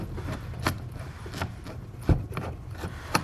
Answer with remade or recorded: remade